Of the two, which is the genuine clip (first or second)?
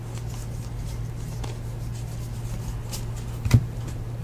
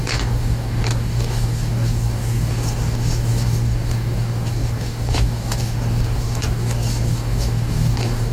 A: first